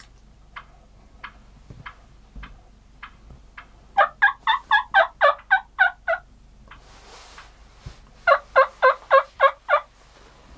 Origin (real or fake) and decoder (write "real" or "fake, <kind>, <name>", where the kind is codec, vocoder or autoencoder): real